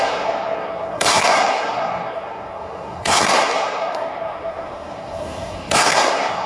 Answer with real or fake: fake